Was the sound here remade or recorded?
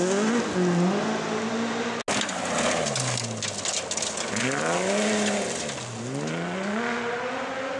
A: recorded